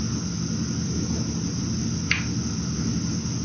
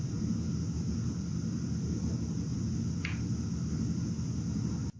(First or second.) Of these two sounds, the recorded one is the first